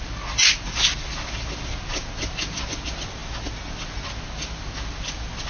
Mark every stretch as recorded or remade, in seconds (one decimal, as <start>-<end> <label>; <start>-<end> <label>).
0.0-5.5 recorded